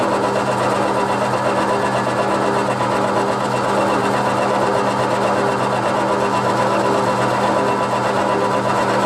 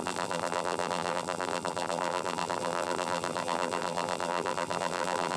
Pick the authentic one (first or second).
first